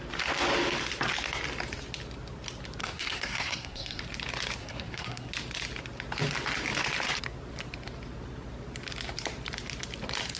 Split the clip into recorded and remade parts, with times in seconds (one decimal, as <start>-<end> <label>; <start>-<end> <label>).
0.0-2.8 recorded; 2.8-4.0 remade; 4.0-4.6 recorded; 4.6-5.3 remade; 5.3-10.4 recorded